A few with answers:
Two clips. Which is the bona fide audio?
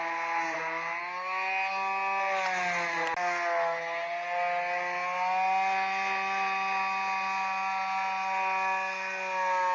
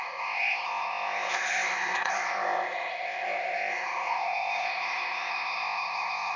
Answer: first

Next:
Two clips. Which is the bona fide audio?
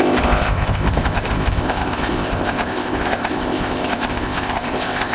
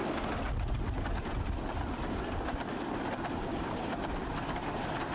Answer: second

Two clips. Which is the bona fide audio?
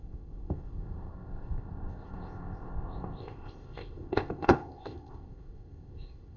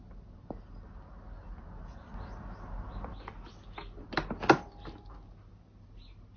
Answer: second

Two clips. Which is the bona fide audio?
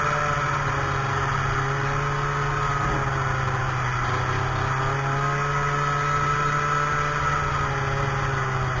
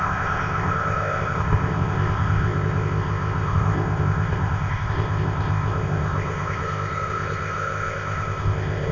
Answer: first